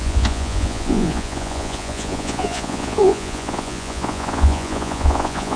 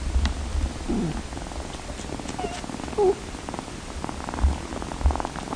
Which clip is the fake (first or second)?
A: first